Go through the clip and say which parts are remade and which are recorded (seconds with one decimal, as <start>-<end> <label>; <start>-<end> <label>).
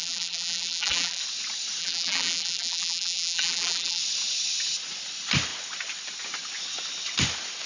0.0-1.2 remade; 1.2-1.8 recorded; 1.8-4.0 remade; 4.0-7.7 recorded